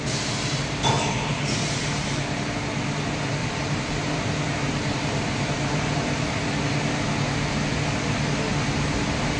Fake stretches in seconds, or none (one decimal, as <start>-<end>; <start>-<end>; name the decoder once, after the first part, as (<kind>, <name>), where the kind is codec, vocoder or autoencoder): 1.3-1.8 (vocoder, BigVGAN v2); 3.4-6.3